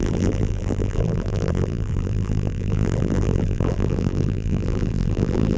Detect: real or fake fake